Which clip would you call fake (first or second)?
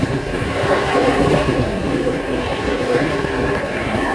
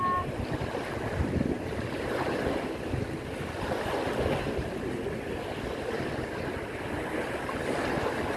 first